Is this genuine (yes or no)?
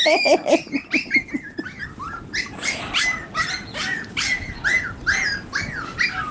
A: yes